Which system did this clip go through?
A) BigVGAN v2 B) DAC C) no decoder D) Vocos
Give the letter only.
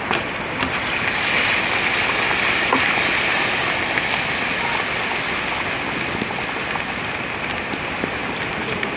C